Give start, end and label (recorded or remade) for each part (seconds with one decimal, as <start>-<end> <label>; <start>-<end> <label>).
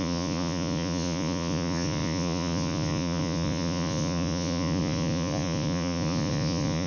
0.0-6.9 remade